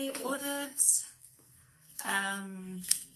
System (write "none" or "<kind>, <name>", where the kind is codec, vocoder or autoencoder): codec, SNAC